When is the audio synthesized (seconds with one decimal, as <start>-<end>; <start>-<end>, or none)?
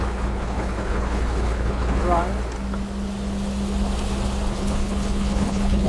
0.0-2.0; 4.5-5.9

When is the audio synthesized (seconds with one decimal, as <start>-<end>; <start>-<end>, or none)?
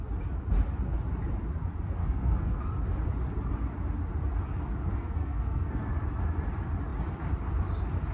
2.0-2.6; 5.0-5.9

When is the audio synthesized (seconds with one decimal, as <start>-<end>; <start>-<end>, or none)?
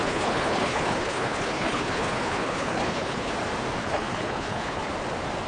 0.0-3.3; 3.8-4.9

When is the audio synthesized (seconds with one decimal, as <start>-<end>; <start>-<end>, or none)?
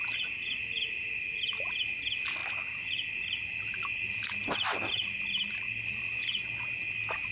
none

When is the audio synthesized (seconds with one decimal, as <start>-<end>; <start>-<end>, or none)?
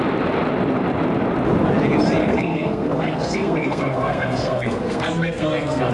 2.2-5.9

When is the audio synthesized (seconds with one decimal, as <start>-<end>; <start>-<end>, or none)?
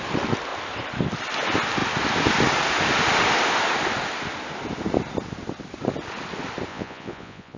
6.7-7.6